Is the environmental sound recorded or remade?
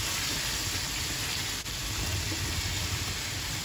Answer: remade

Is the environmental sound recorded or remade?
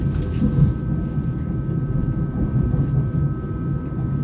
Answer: recorded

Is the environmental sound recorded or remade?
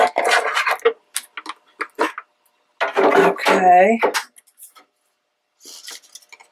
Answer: recorded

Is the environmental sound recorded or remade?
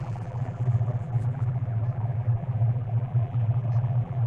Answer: remade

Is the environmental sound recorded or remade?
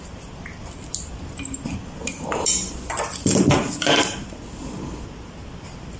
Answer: recorded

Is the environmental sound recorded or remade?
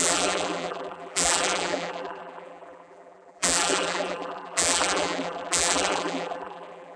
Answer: remade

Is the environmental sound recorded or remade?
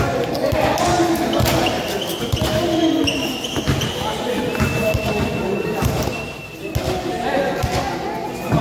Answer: recorded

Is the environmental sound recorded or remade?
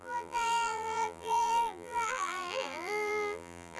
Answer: remade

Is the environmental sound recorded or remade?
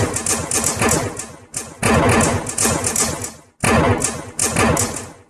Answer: recorded